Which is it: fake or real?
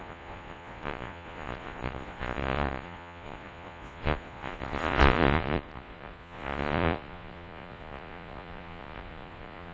fake